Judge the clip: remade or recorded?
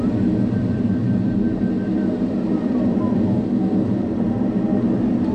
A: recorded